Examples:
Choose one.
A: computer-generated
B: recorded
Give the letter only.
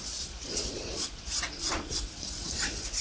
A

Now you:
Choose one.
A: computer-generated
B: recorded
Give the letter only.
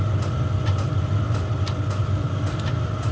B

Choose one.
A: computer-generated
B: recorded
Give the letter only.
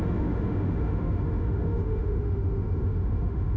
A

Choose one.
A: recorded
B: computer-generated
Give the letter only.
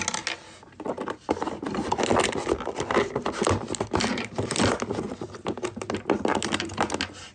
A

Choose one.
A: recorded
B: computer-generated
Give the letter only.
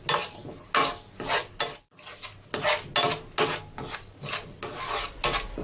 A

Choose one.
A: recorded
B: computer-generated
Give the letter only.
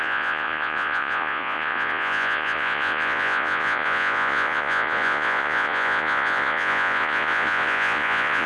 B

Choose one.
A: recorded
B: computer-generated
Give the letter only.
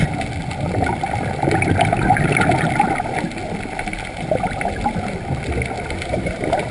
A